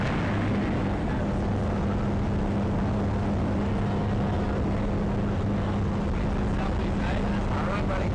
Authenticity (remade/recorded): recorded